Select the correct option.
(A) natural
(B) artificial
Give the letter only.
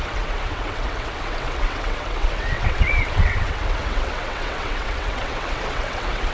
B